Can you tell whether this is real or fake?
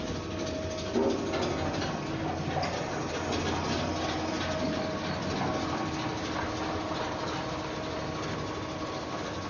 real